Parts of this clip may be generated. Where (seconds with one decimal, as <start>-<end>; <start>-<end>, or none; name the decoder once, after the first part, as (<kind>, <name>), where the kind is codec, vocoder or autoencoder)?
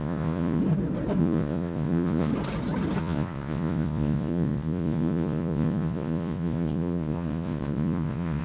0.0-0.6 (vocoder, Vocos); 1.2-2.3; 3.0-8.4